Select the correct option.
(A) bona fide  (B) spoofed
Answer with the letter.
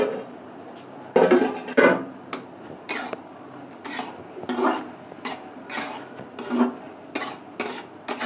A